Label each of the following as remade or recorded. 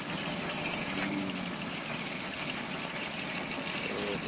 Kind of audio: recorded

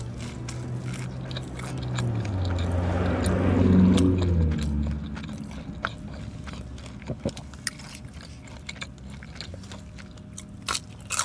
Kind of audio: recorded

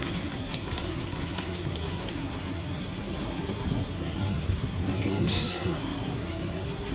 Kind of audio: remade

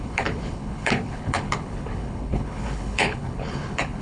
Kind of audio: remade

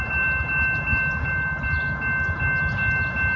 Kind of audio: recorded